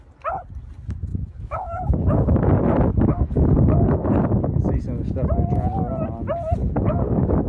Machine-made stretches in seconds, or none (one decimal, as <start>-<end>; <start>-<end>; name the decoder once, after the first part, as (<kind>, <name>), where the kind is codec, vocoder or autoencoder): 1.1-2.4 (codec, DAC); 2.9-4.2; 6.6-7.5